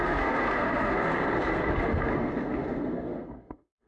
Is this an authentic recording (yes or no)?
no